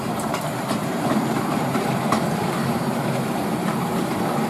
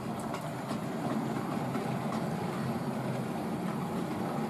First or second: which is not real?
first